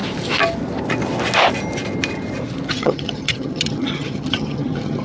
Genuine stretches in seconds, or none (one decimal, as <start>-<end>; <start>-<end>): 0.0-2.7